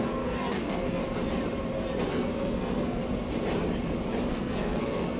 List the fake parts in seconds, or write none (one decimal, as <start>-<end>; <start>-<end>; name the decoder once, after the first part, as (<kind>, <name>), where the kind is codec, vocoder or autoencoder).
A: 0.0-1.0 (codec, SNAC); 2.1-3.0; 4.3-5.2

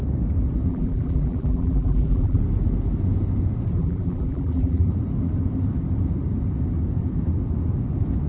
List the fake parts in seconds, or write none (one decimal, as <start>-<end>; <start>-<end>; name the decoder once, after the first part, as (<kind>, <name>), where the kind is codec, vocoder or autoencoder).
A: 0.7-2.4 (vocoder, BigVGAN v2); 3.8-4.9

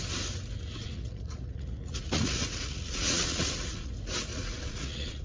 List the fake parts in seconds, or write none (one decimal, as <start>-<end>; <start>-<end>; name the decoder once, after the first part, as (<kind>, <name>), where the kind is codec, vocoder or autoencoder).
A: 0.8-3.9 (vocoder, Vocos); 4.3-5.2